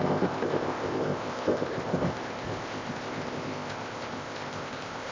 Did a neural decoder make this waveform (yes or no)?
yes